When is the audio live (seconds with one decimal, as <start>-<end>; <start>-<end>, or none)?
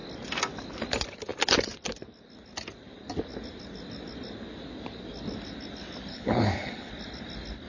0.0-6.1; 6.9-7.7